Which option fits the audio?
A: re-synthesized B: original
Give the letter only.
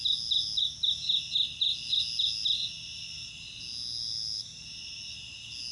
B